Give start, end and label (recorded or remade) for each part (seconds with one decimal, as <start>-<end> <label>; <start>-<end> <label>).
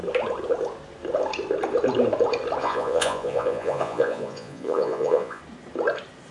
0.0-2.6 recorded; 2.6-5.4 remade; 5.4-6.3 recorded